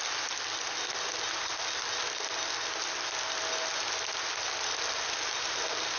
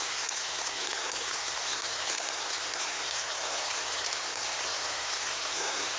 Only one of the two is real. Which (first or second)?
first